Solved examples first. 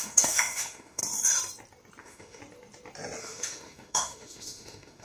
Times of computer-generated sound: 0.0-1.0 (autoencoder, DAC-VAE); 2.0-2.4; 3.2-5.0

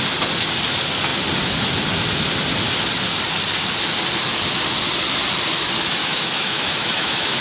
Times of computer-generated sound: 6.0-7.4 (autoencoder, DAC-VAE)

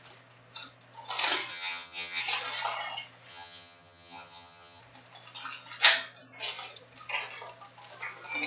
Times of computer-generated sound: 1.5-2.2 (vocoder, HiFi-GAN); 3.3-4.8

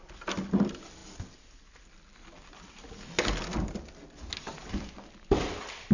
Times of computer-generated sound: none

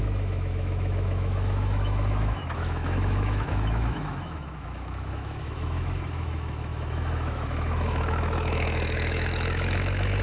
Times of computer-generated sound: 0.0-10.2 (autoencoder, DAC-VAE)

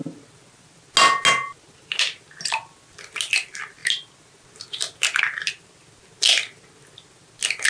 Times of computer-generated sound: none